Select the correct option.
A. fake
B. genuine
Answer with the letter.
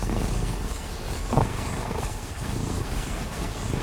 A